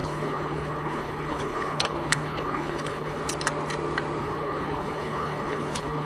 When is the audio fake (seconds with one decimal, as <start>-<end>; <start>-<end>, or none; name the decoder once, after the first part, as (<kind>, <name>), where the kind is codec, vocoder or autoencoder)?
0.0-3.2 (codec, HILCodec); 4.2-6.1